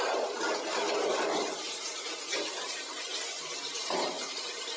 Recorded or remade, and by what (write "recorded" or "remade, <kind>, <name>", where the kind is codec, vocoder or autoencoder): remade, vocoder, BigVGAN v2